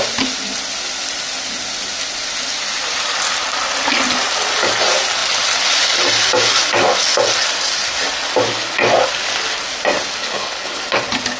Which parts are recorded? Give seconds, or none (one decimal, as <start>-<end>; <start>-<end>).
0.0-10.2; 10.8-11.4